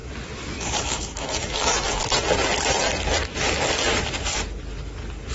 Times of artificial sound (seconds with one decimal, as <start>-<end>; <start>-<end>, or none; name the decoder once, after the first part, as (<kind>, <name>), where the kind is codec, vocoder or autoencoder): 0.8-2.0 (autoencoder, DAC-VAE)